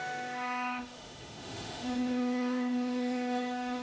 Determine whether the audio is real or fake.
fake